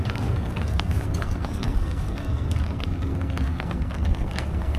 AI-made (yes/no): yes